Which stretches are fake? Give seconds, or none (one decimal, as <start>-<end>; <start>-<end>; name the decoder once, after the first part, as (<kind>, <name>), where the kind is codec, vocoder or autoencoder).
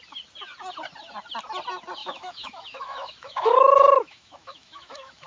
2.0-5.3 (autoencoder, DAC-VAE)